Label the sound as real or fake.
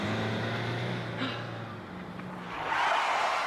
real